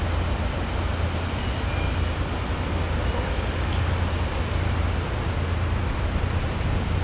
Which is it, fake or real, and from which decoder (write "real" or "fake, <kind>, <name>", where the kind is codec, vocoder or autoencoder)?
real